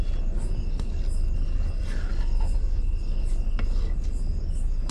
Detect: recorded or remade recorded